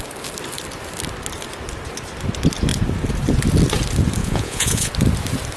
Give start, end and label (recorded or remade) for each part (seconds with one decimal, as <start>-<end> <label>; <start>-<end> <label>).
0.0-4.2 recorded; 4.2-4.9 remade; 4.9-5.6 recorded